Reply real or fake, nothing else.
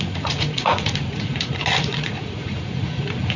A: fake